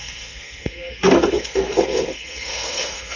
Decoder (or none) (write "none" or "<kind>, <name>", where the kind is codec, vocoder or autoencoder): codec, SNAC